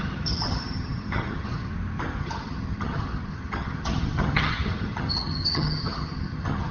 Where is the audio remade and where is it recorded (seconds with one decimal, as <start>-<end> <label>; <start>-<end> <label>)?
0.0-1.7 remade; 1.7-2.2 recorded; 2.2-6.7 remade

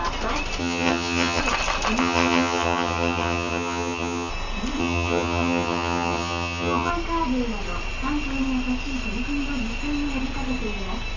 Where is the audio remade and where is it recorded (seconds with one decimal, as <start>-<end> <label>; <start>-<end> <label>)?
0.0-0.6 recorded; 0.6-1.4 remade; 1.4-2.0 recorded; 2.0-4.3 remade; 4.3-4.8 recorded; 4.8-6.9 remade; 6.9-11.2 recorded